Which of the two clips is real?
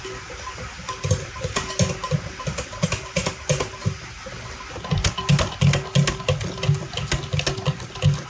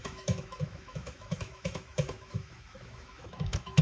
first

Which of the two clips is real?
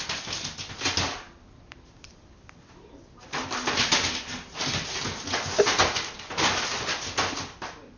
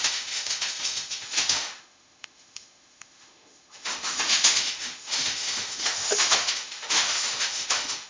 first